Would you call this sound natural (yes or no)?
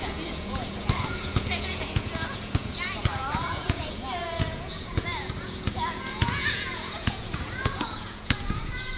no